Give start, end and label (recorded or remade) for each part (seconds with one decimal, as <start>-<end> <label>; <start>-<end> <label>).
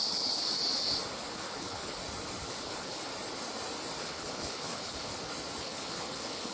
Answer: 0.0-0.4 remade; 0.4-1.3 recorded; 1.3-2.0 remade; 2.0-2.5 recorded; 2.5-3.1 remade; 3.1-4.0 recorded; 4.0-5.1 remade; 5.1-5.6 recorded; 5.6-6.5 remade